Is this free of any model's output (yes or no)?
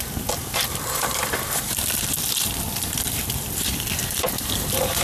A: no